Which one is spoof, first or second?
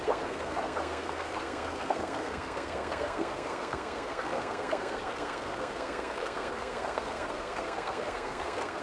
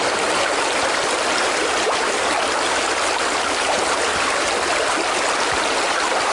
first